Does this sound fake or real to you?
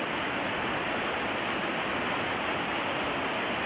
real